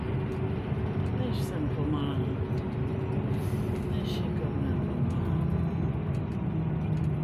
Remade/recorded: recorded